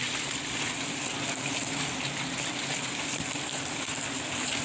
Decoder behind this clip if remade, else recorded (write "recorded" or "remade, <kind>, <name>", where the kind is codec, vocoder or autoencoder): recorded